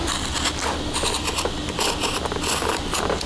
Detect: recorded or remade recorded